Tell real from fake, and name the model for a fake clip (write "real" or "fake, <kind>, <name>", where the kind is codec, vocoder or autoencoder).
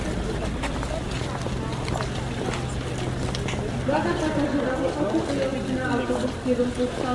real